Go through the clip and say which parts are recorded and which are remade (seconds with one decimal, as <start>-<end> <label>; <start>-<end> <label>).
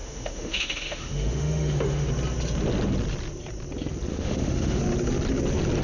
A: 0.0-2.1 remade; 2.1-4.1 recorded; 4.1-4.8 remade; 4.8-5.8 recorded